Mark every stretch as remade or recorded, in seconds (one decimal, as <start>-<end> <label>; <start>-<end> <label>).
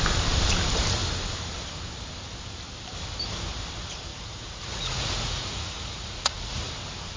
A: 0.0-4.1 recorded; 4.1-6.7 remade; 6.7-7.2 recorded